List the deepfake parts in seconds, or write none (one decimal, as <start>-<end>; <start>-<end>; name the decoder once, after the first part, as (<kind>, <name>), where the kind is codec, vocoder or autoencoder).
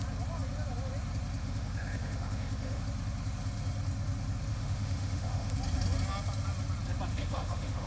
1.4-2.8 (autoencoder, DAC-VAE); 4.5-5.5; 7.1-7.9